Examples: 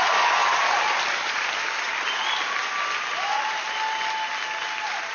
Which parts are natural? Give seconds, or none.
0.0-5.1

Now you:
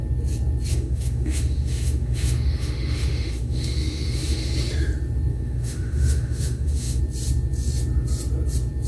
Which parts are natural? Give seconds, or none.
0.0-0.7; 4.5-5.3; 7.0-8.9

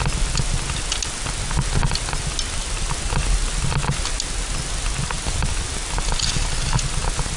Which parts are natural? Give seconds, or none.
0.0-7.4

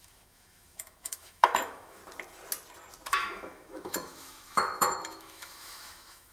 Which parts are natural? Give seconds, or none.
2.0-3.1

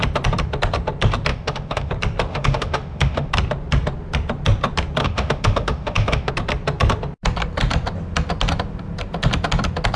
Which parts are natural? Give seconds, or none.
0.0-1.3; 1.9-2.3; 3.3-5.0; 6.3-10.0

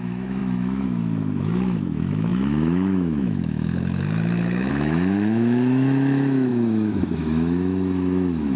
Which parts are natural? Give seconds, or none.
none

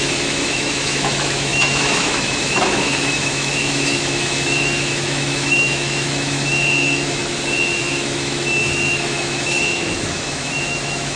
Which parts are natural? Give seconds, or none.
7.2-7.8